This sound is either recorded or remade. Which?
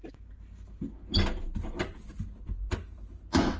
recorded